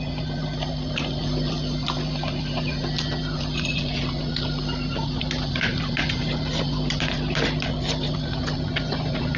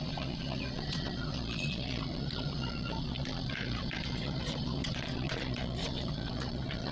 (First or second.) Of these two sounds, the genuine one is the first